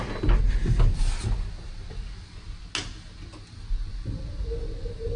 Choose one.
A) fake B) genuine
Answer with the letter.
B